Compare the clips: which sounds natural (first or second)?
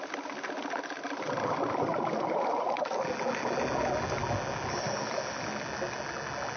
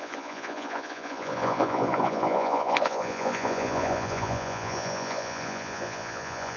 first